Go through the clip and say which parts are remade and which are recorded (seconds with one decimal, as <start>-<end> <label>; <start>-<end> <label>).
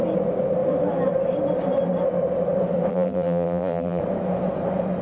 0.0-2.9 recorded; 2.9-4.0 remade; 4.0-5.0 recorded